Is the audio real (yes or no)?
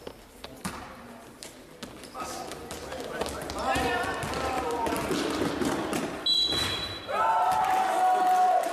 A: yes